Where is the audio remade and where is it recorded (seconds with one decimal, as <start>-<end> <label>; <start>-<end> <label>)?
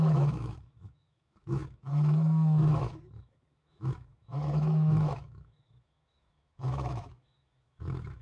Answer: 0.0-8.2 remade